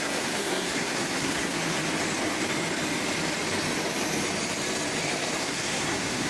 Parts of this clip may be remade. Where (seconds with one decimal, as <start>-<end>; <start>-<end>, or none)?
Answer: 0.0-1.6; 5.4-6.3